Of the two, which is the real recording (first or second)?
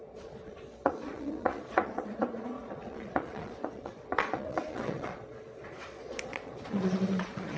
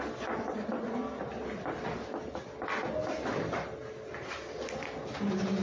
second